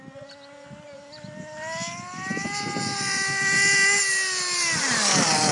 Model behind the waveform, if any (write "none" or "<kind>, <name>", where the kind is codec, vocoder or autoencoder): none